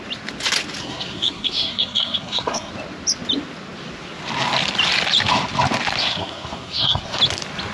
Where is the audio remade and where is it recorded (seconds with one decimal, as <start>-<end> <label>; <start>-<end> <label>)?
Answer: 0.0-0.8 recorded; 0.8-2.7 remade; 2.7-6.0 recorded; 6.0-7.2 remade; 7.2-7.7 recorded